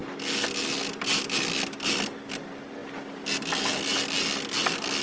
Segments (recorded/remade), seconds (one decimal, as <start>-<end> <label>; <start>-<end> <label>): 0.0-5.0 recorded